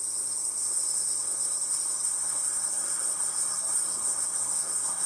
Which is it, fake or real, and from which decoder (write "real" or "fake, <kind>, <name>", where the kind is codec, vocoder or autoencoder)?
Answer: fake, codec, SNAC